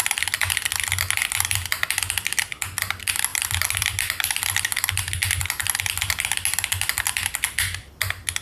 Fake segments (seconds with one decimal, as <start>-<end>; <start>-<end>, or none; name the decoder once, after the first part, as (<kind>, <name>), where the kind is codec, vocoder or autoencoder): 3.3-5.8 (vocoder, BigVGAN v2)

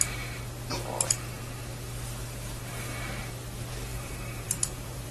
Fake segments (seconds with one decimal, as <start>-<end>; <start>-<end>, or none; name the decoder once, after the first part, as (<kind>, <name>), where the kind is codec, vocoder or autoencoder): 3.9-5.1 (vocoder, BigVGAN v2)

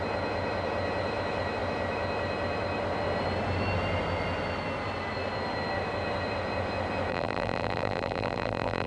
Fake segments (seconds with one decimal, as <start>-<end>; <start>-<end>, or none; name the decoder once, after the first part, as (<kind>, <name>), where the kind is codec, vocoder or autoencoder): 7.1-8.9 (vocoder, BigVGAN v2)

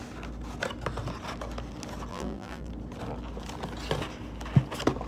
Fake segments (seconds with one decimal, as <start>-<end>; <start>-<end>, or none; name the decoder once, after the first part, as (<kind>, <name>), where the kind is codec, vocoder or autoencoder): 2.1-2.7 (vocoder, BigVGAN v2)

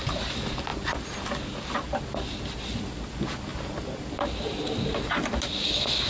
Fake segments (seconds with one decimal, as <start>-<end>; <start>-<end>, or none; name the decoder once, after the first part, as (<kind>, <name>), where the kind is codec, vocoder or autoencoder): 0.7-2.0 (vocoder, BigVGAN v2)

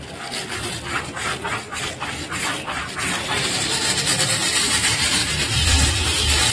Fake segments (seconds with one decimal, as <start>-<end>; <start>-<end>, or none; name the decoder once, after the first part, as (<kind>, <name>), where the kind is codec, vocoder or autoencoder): 5.2-6.0 (vocoder, BigVGAN v2)